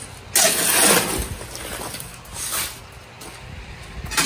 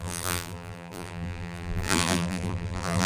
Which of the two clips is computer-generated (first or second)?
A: second